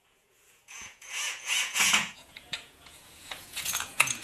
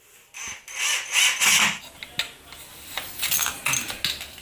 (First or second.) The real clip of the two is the second